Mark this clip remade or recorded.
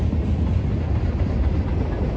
recorded